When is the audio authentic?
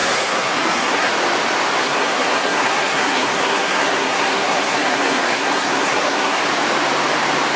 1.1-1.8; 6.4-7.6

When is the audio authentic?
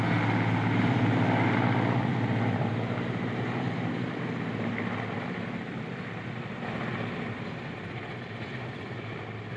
0.0-2.1; 3.9-9.6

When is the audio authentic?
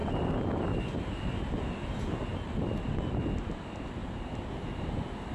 0.0-5.3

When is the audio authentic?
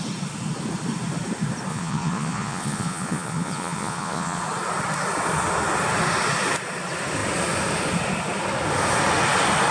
0.0-1.7; 4.4-9.7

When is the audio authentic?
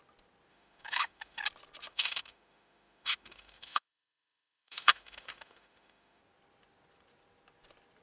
0.0-0.5; 1.4-1.9; 6.2-8.0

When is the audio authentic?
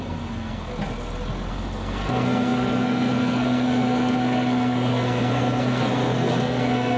0.7-1.5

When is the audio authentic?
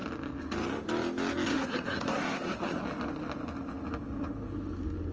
0.0-1.5; 2.8-5.1